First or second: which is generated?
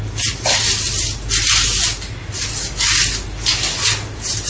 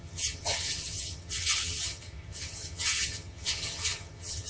second